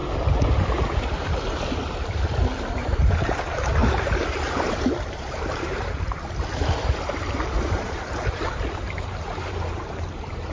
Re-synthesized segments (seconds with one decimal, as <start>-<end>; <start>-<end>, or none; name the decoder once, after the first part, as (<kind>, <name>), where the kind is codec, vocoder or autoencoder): 2.7-10.5 (vocoder, BigVGAN v2)